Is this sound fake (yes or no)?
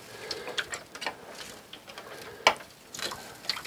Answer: no